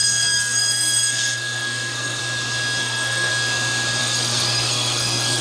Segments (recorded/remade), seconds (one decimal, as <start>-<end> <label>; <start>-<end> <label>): 0.0-2.2 remade; 2.2-2.8 recorded; 2.8-3.3 remade; 3.3-4.0 recorded; 4.0-5.4 remade